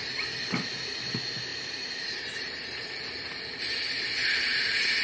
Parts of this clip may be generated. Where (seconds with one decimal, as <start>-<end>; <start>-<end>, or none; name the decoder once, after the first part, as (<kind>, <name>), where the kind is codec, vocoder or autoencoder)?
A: 1.5-2.9 (vocoder, BigVGAN v2); 4.2-5.0